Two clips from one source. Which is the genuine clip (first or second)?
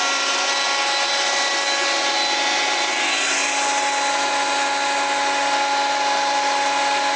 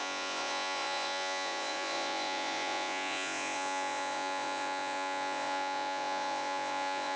first